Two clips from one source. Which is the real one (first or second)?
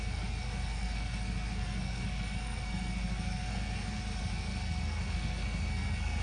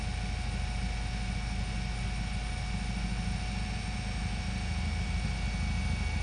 second